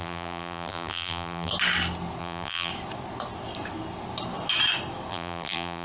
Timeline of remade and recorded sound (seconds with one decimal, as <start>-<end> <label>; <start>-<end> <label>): 0.0-1.5 remade; 1.5-2.2 recorded; 2.2-2.7 remade; 2.7-5.1 recorded; 5.1-5.8 remade